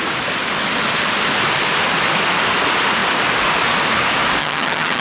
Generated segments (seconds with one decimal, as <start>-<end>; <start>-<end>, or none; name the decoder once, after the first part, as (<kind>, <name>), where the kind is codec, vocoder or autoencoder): 4.4-5.0 (vocoder, HiFi-GAN)